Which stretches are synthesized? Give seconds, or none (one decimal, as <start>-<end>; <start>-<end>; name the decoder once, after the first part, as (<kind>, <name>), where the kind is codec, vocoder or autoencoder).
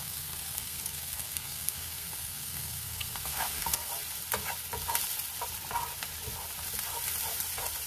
0.0-3.9 (codec, SNAC)